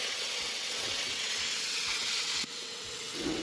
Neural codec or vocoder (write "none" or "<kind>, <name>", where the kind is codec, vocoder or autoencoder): vocoder, WaveNeXt